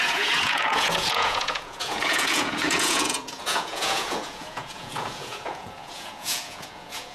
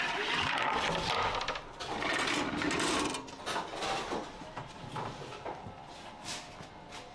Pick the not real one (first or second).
first